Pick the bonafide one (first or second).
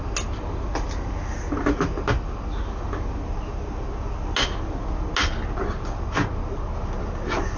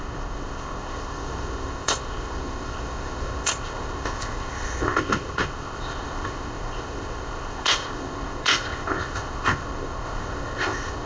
first